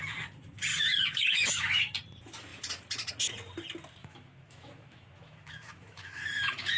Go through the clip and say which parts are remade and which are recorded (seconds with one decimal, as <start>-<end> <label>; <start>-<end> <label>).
0.0-0.7 recorded; 0.7-1.8 remade; 1.8-4.0 recorded; 4.0-6.8 remade